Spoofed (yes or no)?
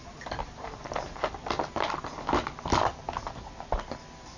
no